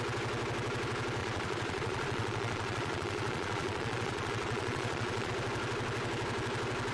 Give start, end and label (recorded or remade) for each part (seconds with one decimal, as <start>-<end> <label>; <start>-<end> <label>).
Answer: 0.0-1.2 recorded; 1.2-5.3 remade; 5.3-6.9 recorded